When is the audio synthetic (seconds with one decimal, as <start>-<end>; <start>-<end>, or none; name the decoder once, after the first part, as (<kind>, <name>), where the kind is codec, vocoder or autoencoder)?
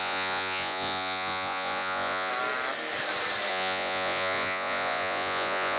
0.0-2.3 (vocoder, Vocos); 3.5-5.8